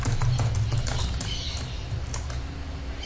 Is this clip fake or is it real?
real